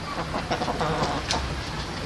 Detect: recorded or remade recorded